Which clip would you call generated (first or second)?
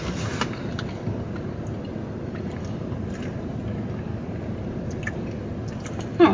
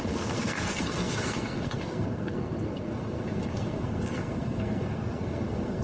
second